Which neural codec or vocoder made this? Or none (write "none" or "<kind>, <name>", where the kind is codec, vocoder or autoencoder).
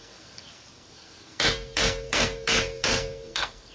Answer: codec, SNAC